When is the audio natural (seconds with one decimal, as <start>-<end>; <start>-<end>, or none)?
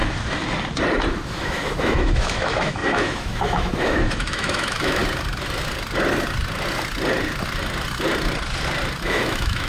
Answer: 0.0-1.3; 5.0-9.0